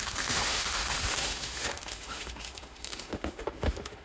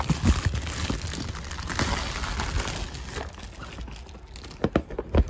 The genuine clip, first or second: second